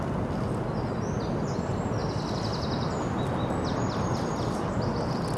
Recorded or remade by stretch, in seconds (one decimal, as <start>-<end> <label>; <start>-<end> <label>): 0.0-5.4 recorded